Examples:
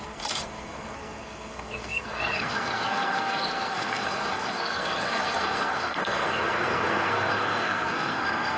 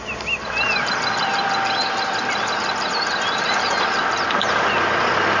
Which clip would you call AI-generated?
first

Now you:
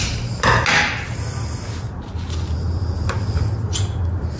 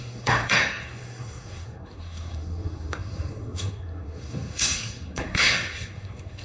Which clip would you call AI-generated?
second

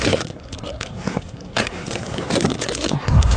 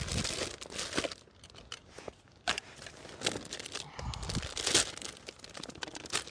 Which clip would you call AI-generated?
first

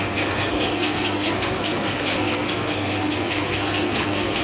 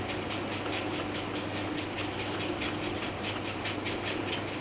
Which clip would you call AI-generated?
first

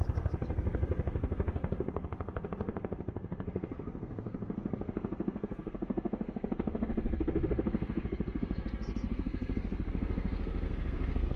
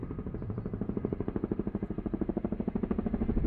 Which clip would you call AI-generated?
first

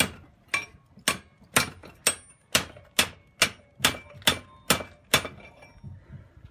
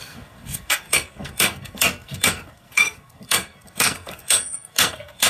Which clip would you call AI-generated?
second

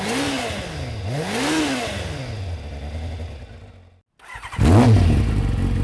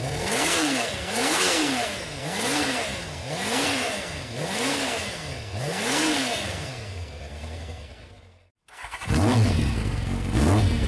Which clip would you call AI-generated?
second